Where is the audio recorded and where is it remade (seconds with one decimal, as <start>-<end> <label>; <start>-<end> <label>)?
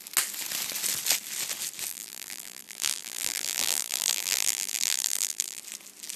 0.0-1.9 recorded; 1.9-5.6 remade; 5.6-6.2 recorded